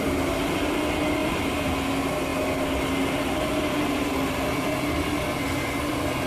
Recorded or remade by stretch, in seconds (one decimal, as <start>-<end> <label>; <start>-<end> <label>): 0.0-1.2 recorded; 1.2-1.7 remade; 1.7-6.3 recorded

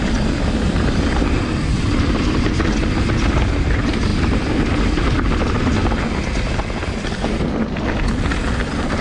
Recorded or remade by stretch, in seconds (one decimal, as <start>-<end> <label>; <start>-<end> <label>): 0.0-9.0 recorded

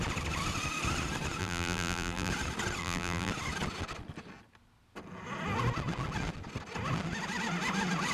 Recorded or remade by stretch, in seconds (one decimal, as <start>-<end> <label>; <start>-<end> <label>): 0.0-1.4 recorded; 1.4-2.3 remade; 2.3-2.8 recorded; 2.8-3.3 remade; 3.3-8.1 recorded

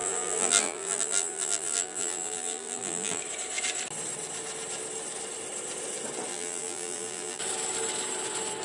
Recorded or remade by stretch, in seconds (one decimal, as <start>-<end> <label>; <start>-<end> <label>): 0.0-3.2 remade; 3.2-6.3 recorded; 6.3-7.4 remade; 7.4-8.6 recorded

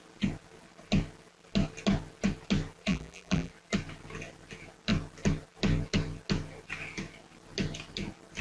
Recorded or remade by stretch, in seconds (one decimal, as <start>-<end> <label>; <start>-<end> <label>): 0.0-2.9 recorded; 2.9-3.5 remade; 3.5-8.4 recorded

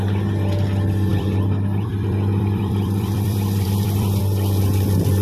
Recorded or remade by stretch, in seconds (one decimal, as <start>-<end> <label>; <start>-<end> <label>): 0.0-1.1 recorded; 1.1-4.2 remade; 4.2-5.2 recorded

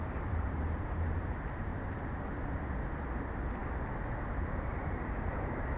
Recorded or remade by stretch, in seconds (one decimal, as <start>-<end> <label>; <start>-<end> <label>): 0.0-1.7 remade; 1.7-3.2 recorded; 3.2-5.8 remade